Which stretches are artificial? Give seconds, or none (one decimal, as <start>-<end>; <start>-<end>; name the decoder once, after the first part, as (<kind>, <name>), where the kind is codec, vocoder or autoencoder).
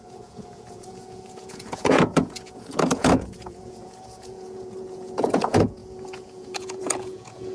0.0-7.5 (vocoder, Vocos)